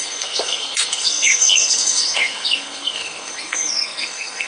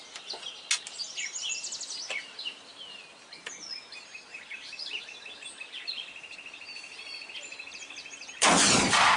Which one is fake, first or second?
first